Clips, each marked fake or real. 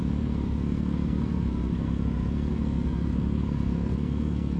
fake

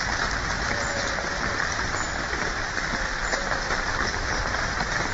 fake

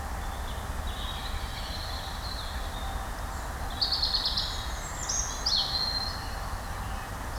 real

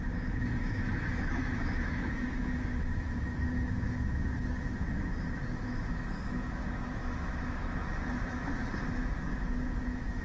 fake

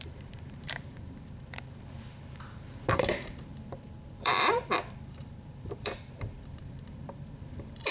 fake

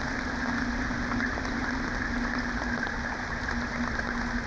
real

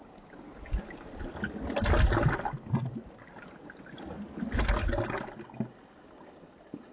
real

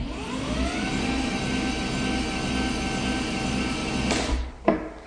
real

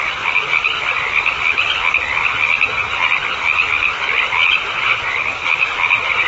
fake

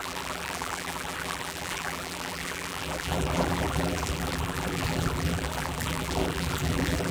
fake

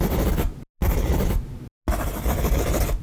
real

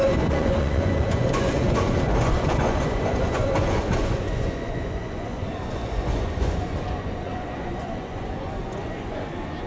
fake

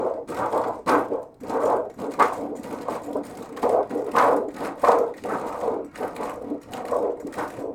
real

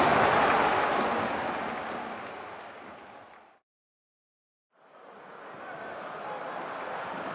real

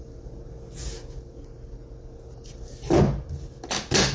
real